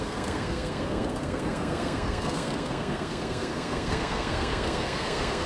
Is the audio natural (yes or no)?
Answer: no